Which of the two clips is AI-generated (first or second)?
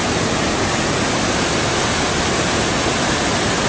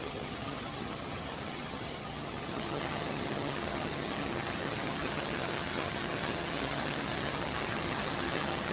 second